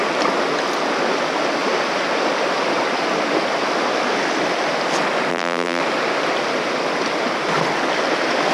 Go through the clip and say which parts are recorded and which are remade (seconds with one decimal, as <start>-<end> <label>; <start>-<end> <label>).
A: 0.0-5.3 recorded; 5.3-5.8 remade; 5.8-8.5 recorded